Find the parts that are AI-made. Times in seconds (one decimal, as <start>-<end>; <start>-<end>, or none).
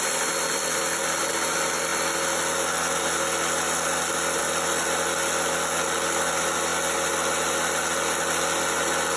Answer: none